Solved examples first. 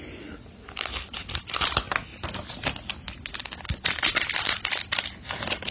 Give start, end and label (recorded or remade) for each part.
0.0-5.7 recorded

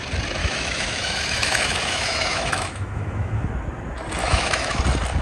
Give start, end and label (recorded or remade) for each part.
0.0-0.4 recorded; 0.4-3.5 remade; 3.5-4.2 recorded; 4.2-4.8 remade; 4.8-5.2 recorded